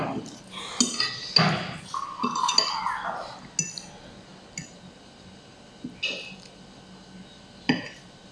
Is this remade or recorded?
recorded